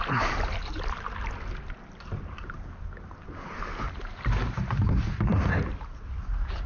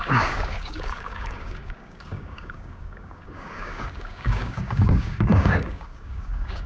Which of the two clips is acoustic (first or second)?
first